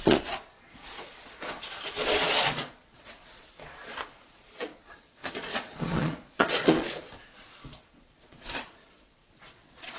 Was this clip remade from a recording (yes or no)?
yes